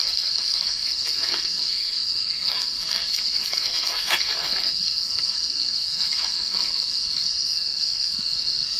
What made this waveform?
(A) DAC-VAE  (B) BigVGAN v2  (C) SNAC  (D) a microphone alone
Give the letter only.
C